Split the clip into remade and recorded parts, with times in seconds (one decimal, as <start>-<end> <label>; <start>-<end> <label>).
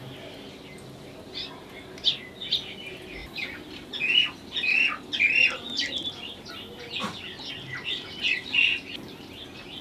0.0-9.8 recorded